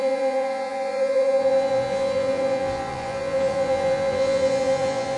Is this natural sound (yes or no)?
no